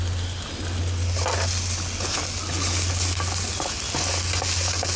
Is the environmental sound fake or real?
real